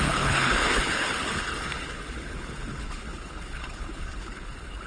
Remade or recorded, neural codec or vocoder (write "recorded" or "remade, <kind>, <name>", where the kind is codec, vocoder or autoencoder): remade, codec, HILCodec